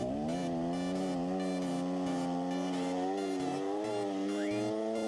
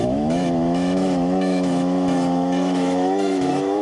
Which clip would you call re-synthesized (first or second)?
second